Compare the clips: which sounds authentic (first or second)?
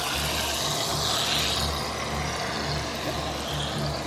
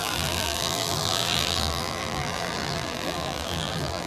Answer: first